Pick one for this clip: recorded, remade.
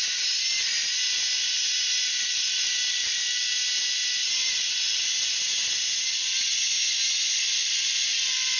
recorded